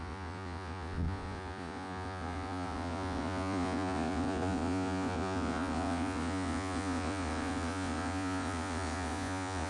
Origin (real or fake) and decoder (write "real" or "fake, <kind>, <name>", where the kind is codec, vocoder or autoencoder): fake, vocoder, Vocos